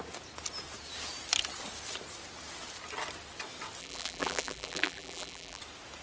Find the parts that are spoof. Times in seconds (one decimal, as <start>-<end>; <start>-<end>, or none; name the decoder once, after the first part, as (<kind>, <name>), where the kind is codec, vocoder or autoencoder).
3.8-5.6 (vocoder, BigVGAN v2)